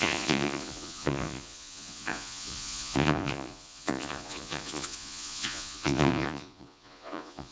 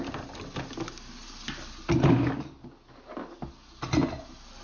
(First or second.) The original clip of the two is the second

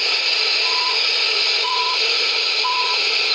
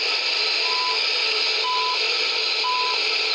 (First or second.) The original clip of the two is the second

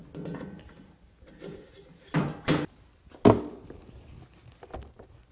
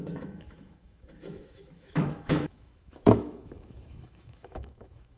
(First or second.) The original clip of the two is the first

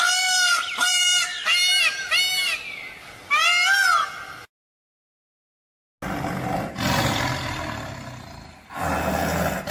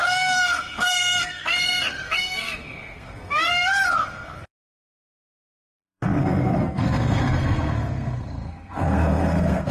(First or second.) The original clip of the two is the first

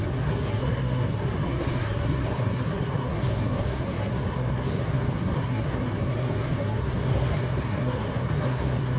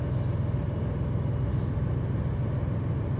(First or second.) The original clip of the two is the second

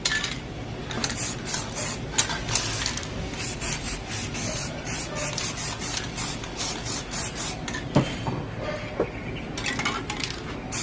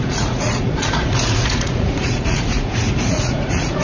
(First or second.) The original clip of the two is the first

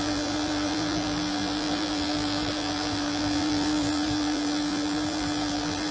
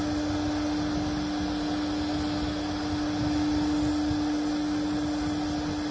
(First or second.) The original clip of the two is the second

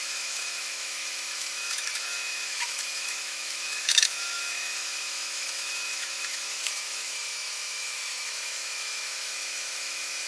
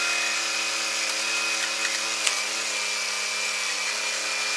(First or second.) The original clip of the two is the second